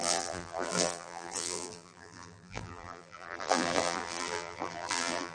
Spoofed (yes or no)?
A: yes